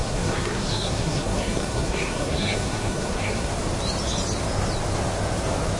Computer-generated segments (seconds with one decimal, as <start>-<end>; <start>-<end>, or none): 0.0-3.5